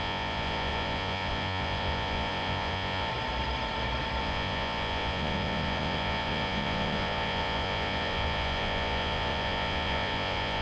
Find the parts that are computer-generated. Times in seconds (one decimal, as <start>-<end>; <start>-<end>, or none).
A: 0.0-3.1; 4.2-10.6